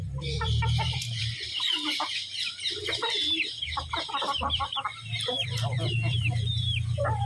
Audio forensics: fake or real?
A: fake